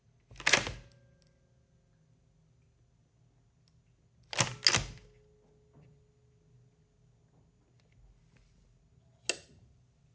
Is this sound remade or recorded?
recorded